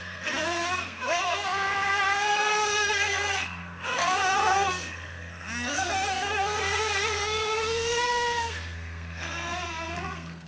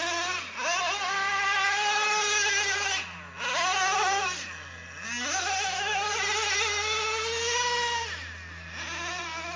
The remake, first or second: first